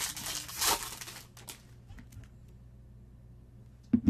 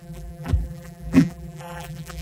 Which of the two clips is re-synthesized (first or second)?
second